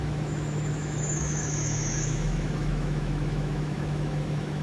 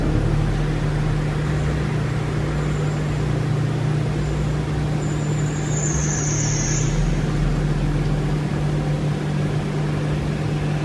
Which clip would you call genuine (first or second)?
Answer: second